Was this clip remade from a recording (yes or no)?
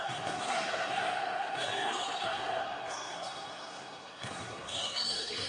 yes